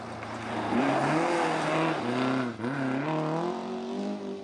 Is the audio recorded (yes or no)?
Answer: yes